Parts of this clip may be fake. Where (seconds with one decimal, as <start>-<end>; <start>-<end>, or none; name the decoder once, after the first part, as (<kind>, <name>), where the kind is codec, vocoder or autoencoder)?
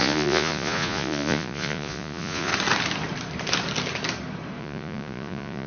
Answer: 0.0-2.5 (vocoder, Vocos); 4.6-5.7